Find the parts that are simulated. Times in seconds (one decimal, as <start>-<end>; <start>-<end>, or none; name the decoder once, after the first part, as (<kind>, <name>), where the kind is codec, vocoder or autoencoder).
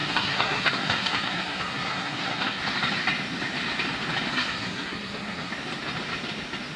0.0-2.6 (codec, SNAC); 4.3-5.5